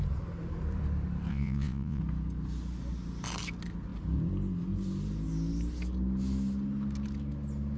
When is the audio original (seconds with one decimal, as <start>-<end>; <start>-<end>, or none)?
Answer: 0.0-1.3; 2.0-7.8